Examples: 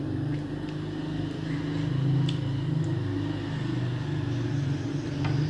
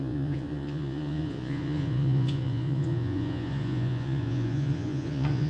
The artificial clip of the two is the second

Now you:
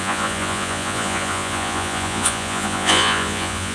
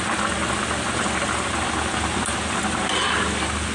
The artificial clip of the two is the first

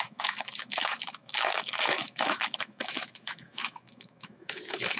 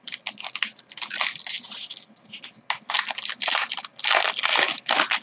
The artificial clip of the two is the first